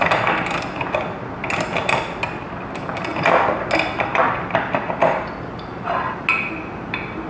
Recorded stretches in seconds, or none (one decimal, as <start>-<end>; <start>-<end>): 0.0-7.3